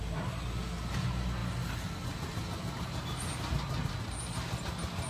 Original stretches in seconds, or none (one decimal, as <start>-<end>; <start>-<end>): 0.0-5.1